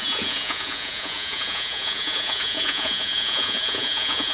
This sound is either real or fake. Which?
fake